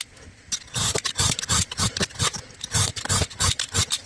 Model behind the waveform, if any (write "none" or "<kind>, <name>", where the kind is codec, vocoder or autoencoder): none